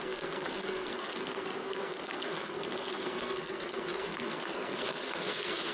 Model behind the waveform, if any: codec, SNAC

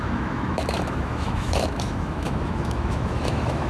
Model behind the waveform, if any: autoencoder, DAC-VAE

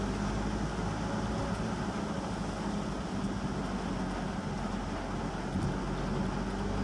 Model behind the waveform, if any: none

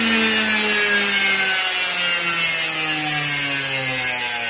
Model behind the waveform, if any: none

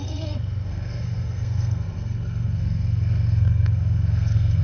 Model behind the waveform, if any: codec, SNAC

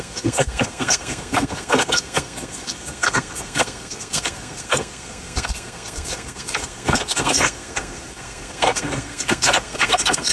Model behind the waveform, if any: codec, SNAC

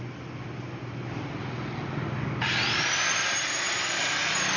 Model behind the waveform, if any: vocoder, BigVGAN v2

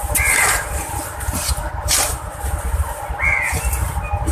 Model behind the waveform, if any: none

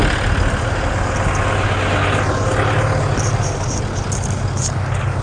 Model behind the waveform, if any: none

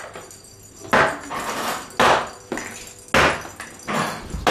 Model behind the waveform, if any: none